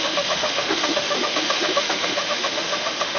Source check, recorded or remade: remade